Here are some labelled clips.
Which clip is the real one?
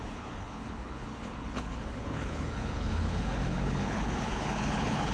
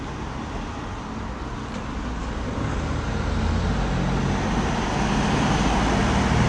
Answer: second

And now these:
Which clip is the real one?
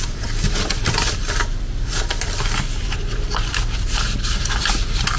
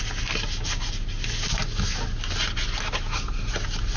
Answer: second